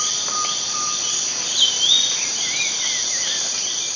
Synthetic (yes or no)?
no